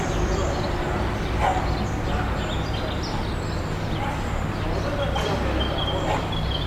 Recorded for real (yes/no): yes